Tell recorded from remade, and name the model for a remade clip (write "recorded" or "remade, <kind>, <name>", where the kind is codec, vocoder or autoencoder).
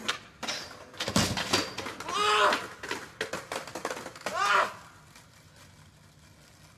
recorded